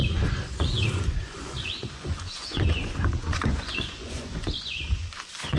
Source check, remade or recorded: remade